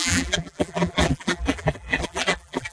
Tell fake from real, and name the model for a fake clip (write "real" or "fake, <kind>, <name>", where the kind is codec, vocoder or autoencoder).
fake, vocoder, BigVGAN v2